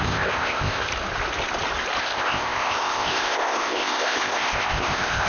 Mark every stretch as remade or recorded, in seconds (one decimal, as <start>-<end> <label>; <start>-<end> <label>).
0.0-0.9 remade; 0.9-2.0 recorded; 2.0-5.3 remade